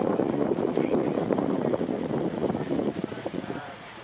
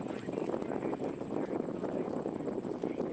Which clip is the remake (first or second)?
first